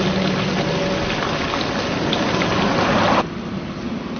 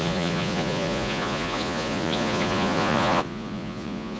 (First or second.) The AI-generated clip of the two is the second